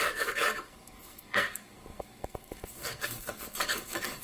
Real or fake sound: fake